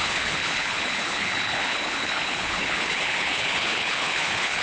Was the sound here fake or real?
fake